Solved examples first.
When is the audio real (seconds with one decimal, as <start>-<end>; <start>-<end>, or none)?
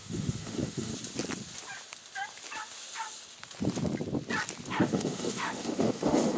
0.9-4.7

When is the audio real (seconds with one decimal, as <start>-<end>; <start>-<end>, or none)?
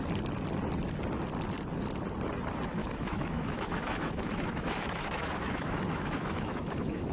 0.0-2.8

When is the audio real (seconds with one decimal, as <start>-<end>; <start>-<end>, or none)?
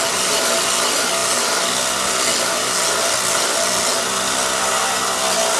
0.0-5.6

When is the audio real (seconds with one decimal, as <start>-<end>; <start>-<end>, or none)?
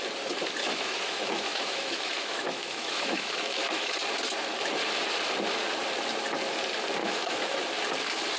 0.0-0.6; 3.9-7.0; 7.6-8.4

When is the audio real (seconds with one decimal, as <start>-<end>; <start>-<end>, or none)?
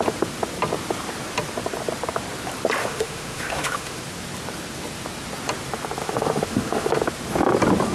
0.0-2.8; 4.0-6.0; 6.9-7.9